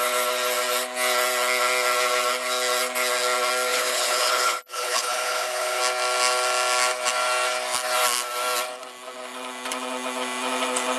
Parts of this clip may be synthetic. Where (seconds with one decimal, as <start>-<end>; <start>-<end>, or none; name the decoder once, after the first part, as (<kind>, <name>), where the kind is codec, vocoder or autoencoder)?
3.7-5.8 (codec, HILCodec)